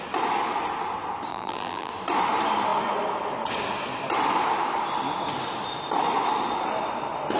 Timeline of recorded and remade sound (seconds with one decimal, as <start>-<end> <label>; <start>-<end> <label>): 0.0-1.3 recorded; 1.3-1.9 remade; 1.9-7.4 recorded